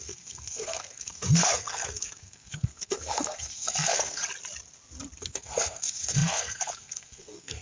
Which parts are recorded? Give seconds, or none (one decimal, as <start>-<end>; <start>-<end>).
4.2-5.2